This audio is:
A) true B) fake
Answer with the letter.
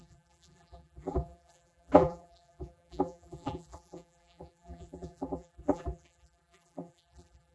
B